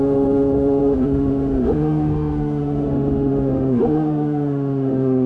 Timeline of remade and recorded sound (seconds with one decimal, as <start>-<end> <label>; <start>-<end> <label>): 0.0-5.3 remade